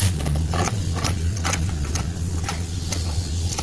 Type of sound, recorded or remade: remade